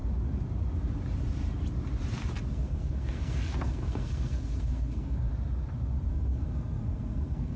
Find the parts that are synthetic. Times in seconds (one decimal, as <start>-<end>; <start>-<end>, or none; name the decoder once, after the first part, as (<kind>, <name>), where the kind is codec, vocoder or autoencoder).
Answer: 2.5-5.3 (codec, SNAC); 6.1-7.6